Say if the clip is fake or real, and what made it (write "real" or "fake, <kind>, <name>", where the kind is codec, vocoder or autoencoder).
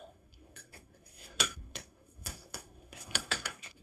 fake, codec, SNAC